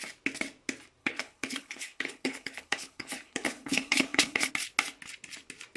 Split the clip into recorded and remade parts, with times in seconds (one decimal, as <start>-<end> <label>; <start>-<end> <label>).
0.0-1.0 recorded; 1.0-4.5 remade; 4.5-5.8 recorded

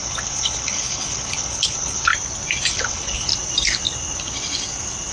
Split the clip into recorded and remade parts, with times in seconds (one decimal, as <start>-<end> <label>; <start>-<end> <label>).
0.0-2.1 remade; 2.1-2.7 recorded; 2.7-3.3 remade; 3.3-5.1 recorded

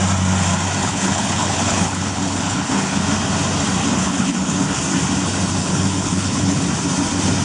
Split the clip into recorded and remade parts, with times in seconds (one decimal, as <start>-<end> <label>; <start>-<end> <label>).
0.0-0.8 recorded; 0.8-3.0 remade; 3.0-3.8 recorded; 3.8-4.8 remade; 4.8-5.6 recorded; 5.6-6.6 remade; 6.6-7.4 recorded

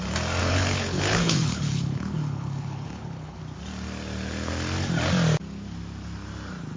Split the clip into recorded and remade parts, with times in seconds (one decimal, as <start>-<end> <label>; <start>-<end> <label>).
0.0-0.4 recorded; 0.4-3.4 remade; 3.4-6.8 recorded

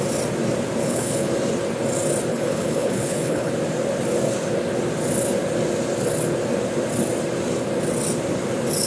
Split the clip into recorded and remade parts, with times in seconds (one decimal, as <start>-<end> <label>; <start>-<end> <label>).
0.0-0.8 recorded; 0.8-1.3 remade; 1.3-2.3 recorded; 2.3-3.5 remade; 3.5-8.9 recorded

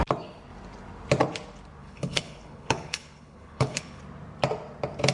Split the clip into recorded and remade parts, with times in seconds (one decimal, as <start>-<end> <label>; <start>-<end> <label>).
0.0-1.8 recorded; 1.8-4.0 remade; 4.0-5.1 recorded

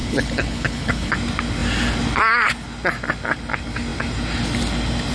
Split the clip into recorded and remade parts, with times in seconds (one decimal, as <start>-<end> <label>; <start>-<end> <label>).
0.0-1.1 remade; 1.1-5.1 recorded